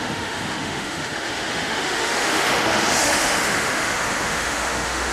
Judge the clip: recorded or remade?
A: remade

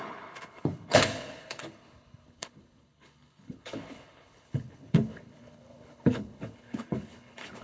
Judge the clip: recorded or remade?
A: remade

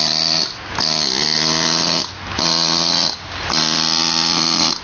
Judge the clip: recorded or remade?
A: recorded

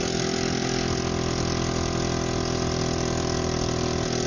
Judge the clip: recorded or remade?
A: recorded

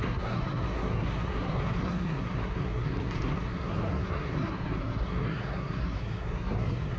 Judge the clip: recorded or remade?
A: remade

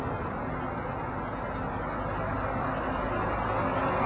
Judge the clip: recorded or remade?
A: recorded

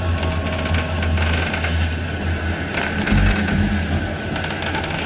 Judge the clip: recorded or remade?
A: recorded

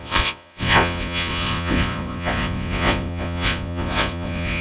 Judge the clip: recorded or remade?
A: remade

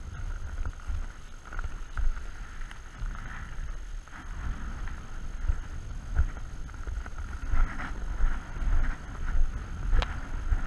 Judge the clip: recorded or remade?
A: recorded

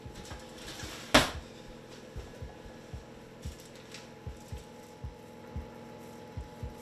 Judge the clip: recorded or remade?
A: recorded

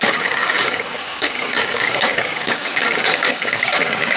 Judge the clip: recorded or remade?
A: remade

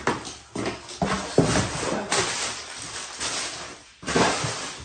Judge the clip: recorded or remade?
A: recorded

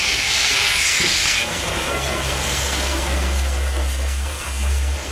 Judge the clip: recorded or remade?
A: remade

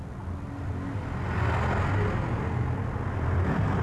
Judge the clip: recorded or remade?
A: recorded